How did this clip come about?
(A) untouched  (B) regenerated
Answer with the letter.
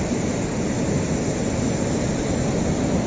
A